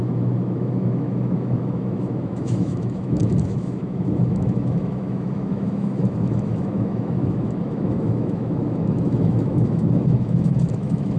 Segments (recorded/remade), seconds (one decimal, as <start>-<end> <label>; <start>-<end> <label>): 0.0-11.2 remade

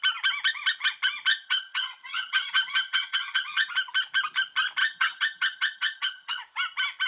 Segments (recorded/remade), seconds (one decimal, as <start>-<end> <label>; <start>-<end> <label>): 0.0-1.3 recorded; 1.3-3.7 remade; 3.7-4.8 recorded; 4.8-6.4 remade; 6.4-7.1 recorded

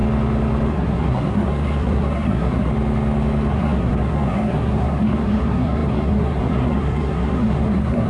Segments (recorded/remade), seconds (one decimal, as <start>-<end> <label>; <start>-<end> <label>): 0.0-0.7 recorded; 0.7-2.7 remade; 2.7-3.5 recorded; 3.5-8.1 remade